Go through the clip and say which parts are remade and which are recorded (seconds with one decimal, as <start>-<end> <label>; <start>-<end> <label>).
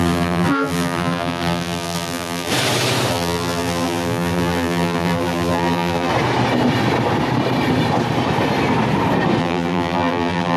0.0-2.5 remade; 2.5-3.1 recorded; 3.1-6.1 remade; 6.1-9.4 recorded; 9.4-10.6 remade